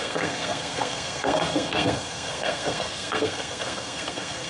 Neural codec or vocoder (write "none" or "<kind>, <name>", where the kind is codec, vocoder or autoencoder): codec, SNAC